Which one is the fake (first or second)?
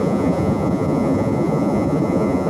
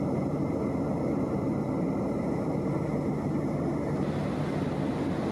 first